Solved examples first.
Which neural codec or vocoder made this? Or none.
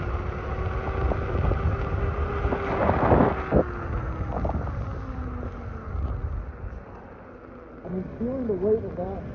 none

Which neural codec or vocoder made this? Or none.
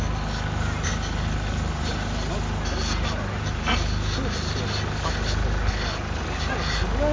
none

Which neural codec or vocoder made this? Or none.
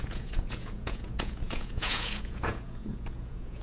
vocoder, Vocos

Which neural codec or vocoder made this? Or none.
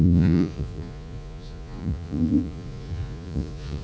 vocoder, Vocos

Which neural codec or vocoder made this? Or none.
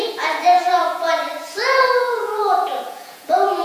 vocoder, Vocos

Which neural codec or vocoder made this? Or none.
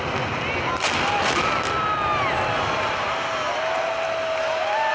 none